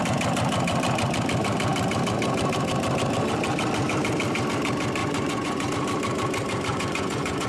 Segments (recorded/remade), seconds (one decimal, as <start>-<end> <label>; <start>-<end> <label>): 0.0-5.0 recorded; 5.0-5.7 remade; 5.7-6.7 recorded; 6.7-7.5 remade